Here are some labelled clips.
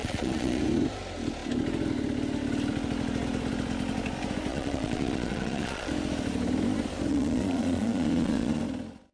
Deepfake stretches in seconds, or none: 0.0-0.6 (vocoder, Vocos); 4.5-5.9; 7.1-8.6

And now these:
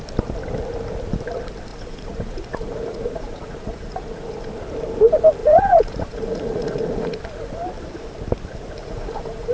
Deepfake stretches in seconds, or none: 1.7-4.5 (vocoder, Vocos); 5.4-7.1; 8.8-9.5